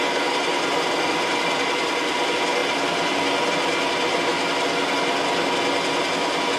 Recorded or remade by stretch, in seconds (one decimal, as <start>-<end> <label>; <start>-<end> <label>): 0.0-6.6 recorded